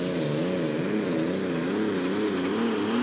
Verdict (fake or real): real